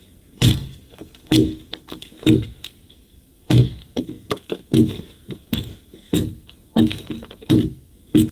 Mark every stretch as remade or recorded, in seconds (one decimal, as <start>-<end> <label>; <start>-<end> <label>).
0.0-8.3 remade